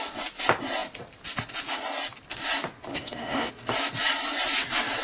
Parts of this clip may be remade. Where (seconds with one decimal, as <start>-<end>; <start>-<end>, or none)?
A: 2.9-3.5